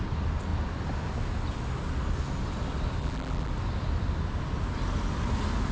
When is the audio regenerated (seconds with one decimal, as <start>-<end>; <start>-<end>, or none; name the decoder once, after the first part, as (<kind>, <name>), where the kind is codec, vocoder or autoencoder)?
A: 3.0-3.5 (vocoder, BigVGAN v2)